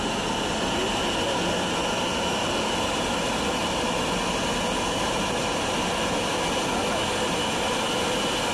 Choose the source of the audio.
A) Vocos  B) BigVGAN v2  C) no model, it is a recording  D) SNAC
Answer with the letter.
C